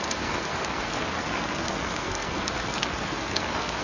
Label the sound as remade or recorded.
remade